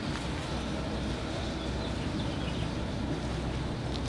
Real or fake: real